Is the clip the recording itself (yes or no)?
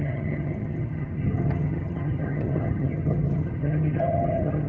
no